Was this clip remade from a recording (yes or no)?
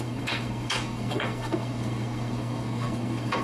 yes